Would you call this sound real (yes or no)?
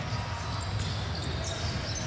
yes